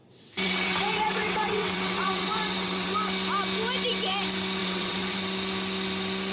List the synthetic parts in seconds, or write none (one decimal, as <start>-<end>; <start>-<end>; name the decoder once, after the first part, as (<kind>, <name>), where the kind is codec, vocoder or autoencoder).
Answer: 0.0-2.9 (vocoder, WaveNeXt); 4.6-5.2